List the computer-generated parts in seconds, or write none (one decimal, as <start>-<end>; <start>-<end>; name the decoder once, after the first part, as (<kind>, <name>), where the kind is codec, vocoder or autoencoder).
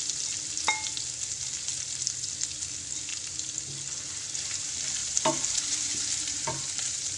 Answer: 5.0-7.2 (vocoder, BigVGAN v2)